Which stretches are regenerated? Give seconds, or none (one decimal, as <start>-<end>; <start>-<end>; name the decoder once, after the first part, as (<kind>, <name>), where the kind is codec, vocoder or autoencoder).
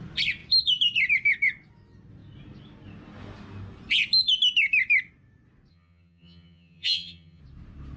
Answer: 5.7-7.4 (vocoder, HiFi-GAN)